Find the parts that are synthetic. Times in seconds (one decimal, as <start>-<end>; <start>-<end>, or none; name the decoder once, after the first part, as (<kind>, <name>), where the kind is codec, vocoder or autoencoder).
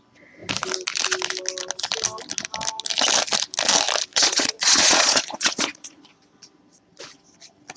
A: 4.1-7.0 (vocoder, Vocos)